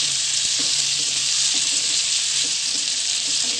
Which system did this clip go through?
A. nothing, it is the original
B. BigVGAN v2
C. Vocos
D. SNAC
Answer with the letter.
B